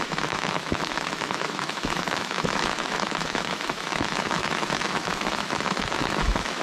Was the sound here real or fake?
fake